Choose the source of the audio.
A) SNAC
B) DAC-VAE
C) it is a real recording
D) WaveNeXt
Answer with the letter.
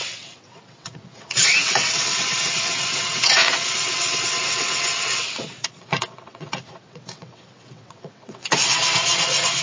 D